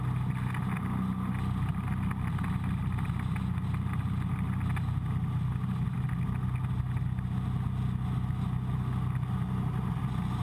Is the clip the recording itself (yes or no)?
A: yes